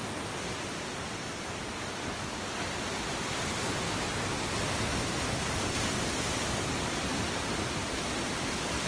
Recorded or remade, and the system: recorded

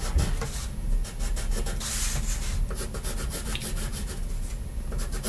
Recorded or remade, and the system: recorded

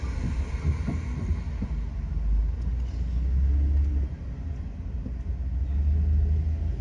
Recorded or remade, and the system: recorded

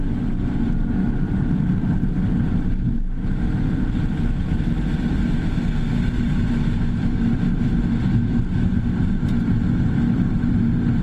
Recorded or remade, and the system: recorded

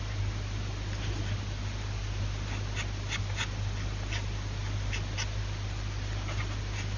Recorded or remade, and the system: recorded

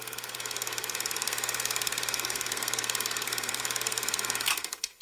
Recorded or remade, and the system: remade, codec, SNAC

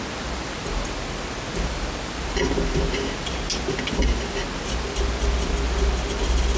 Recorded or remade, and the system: recorded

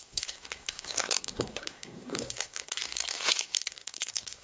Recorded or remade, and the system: remade, codec, SNAC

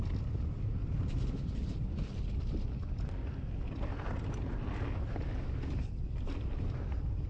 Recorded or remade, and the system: recorded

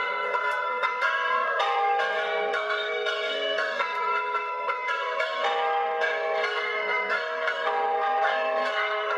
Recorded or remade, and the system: remade, codec, SNAC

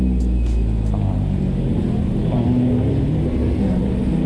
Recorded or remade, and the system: recorded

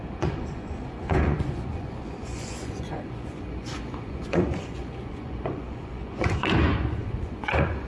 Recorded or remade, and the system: remade, vocoder, Vocos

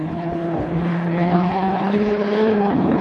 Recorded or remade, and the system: remade, codec, HILCodec